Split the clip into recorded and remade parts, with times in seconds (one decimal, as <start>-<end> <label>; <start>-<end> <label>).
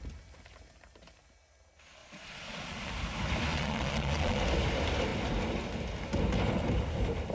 0.0-2.0 recorded; 2.0-2.9 remade; 2.9-3.5 recorded; 3.5-4.4 remade; 4.4-7.3 recorded